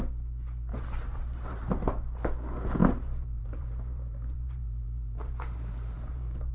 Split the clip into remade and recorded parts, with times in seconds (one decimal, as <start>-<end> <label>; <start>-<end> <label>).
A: 0.0-0.7 recorded; 0.7-2.0 remade; 2.0-2.8 recorded; 2.8-6.5 remade